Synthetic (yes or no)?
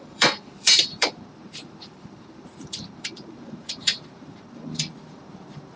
yes